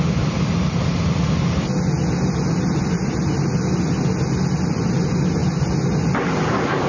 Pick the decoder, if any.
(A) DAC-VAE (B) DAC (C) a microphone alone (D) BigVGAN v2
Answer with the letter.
C